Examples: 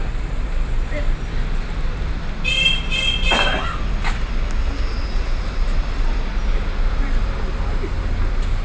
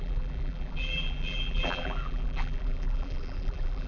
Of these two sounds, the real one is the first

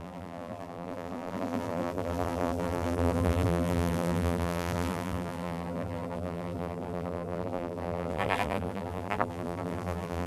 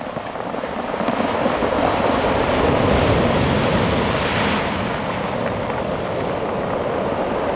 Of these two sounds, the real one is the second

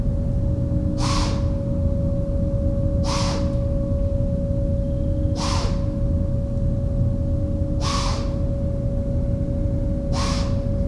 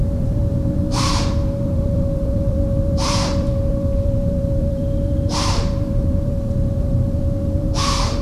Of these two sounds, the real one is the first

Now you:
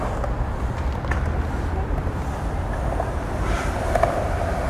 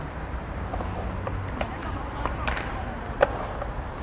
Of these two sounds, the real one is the first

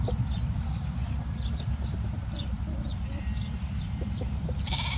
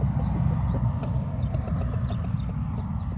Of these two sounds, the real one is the second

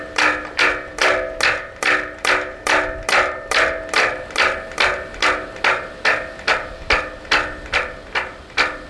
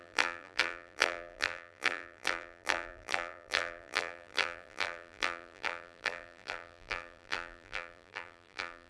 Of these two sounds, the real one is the first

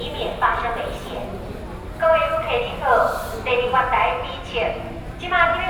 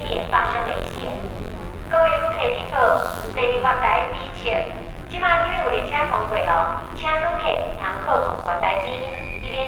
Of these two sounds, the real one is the first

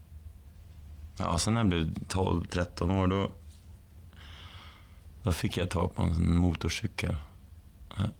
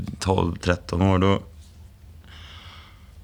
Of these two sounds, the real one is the second